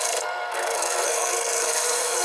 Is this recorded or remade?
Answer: remade